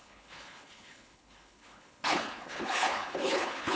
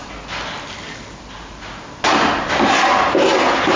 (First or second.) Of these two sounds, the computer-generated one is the first